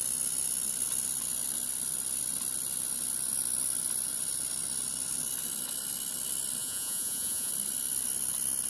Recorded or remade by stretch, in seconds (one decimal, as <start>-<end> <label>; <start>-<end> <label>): 0.0-6.6 recorded; 6.6-7.5 remade; 7.5-8.7 recorded